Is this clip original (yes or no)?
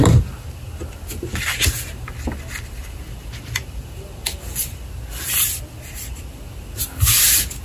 yes